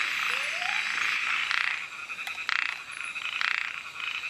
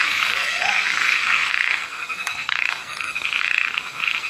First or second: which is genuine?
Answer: first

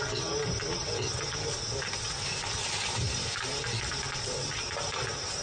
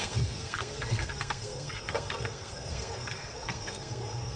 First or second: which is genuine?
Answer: first